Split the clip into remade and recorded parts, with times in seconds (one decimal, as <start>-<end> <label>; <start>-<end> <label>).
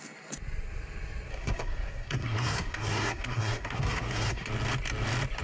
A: 0.0-1.3 recorded; 1.3-4.5 remade; 4.5-5.4 recorded